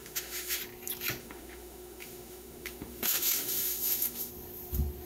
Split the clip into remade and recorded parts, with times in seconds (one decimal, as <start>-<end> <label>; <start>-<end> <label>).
0.0-0.6 remade; 0.6-1.2 recorded; 1.2-4.3 remade; 4.3-5.1 recorded